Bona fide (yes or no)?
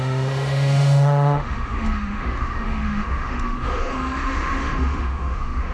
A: no